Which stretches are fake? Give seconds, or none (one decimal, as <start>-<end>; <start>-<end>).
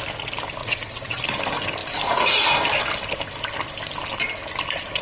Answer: 0.6-1.2